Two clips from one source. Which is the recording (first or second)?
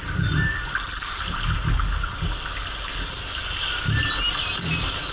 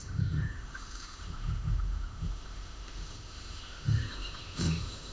first